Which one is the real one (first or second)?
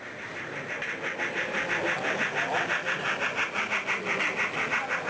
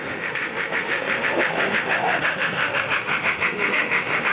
first